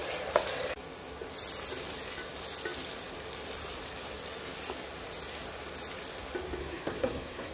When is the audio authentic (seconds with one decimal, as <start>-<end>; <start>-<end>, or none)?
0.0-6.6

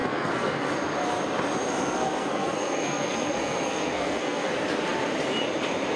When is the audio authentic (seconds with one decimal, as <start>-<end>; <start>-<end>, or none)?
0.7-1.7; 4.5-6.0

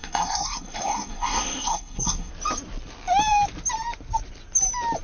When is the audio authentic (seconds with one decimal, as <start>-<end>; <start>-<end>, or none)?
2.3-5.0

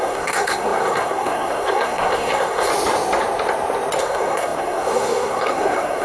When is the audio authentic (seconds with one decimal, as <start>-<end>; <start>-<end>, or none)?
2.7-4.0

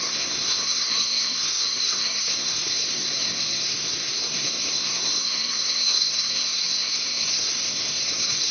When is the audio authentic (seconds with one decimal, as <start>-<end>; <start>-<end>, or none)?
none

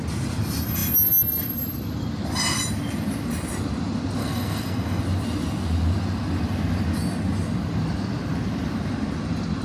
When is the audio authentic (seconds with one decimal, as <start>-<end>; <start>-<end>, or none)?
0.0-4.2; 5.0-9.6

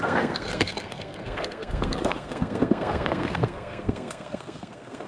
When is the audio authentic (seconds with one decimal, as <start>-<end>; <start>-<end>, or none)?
none

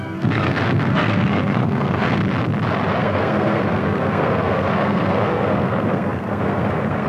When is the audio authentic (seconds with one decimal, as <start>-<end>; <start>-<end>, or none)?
2.2-3.0